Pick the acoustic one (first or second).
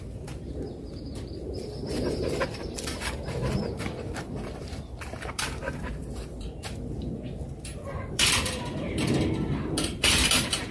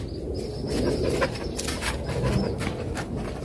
second